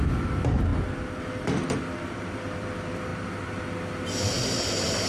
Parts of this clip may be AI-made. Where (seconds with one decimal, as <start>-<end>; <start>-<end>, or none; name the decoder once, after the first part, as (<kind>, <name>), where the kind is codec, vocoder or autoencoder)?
0.0-0.7 (vocoder, BigVGAN v2); 1.2-3.1